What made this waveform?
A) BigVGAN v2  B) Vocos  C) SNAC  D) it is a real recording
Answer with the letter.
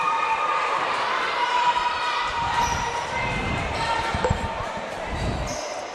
A